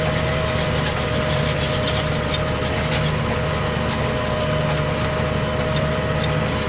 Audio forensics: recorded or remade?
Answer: recorded